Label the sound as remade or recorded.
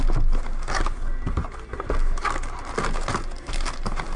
recorded